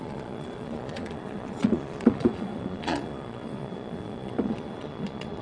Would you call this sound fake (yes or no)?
yes